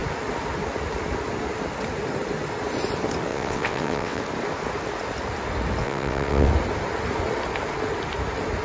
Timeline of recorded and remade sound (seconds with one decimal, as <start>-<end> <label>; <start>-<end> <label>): 0.0-3.3 recorded; 3.3-4.2 remade; 4.2-5.8 recorded; 5.8-6.5 remade; 6.5-8.6 recorded